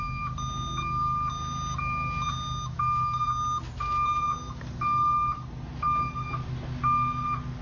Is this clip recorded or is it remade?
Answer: recorded